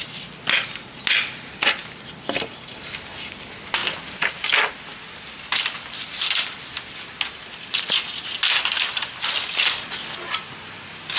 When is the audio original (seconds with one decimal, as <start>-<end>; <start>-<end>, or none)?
0.0-11.2